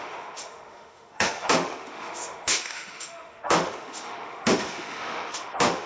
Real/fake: fake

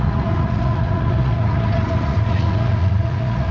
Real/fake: fake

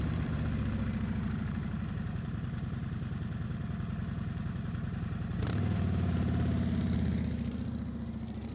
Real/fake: fake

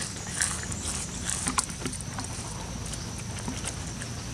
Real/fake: real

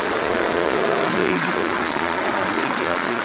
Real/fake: fake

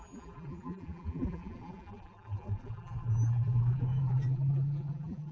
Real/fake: fake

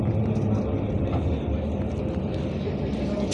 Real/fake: real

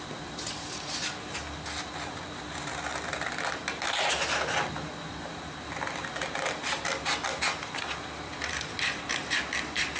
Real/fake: real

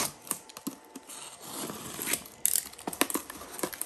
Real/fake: real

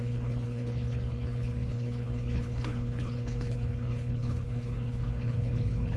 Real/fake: fake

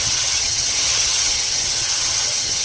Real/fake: fake